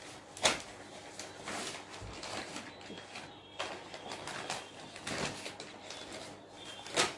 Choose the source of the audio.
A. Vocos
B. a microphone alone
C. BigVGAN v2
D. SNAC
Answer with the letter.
B